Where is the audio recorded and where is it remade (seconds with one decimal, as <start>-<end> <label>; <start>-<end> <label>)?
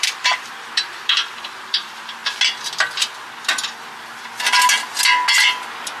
0.0-2.2 remade; 2.2-6.0 recorded